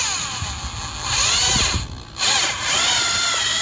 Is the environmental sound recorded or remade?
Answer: recorded